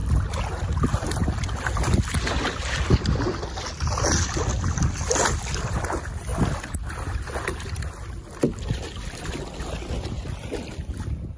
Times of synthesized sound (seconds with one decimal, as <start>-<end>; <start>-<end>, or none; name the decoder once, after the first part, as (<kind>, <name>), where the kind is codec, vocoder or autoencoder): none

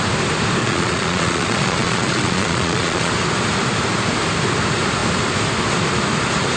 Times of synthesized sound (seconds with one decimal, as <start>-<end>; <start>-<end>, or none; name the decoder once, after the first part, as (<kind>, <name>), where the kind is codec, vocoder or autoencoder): 0.6-3.1 (vocoder, Vocos)

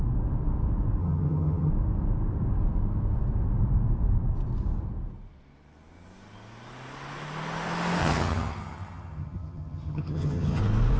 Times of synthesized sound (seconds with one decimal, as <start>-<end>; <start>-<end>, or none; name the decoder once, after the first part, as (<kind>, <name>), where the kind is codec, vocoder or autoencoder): 1.0-1.7 (vocoder, HiFi-GAN); 8.0-10.6